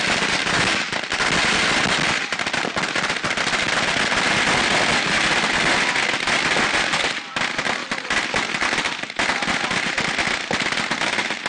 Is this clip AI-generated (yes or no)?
no